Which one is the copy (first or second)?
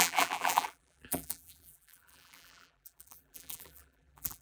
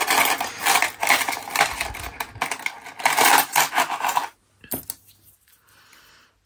first